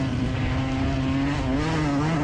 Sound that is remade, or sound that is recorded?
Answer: recorded